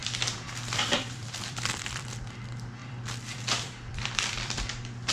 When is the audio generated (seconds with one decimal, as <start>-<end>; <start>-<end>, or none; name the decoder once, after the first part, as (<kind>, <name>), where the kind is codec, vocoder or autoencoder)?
0.0-2.3 (vocoder, BigVGAN v2); 2.8-4.6